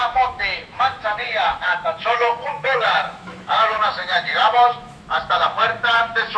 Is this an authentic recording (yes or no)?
no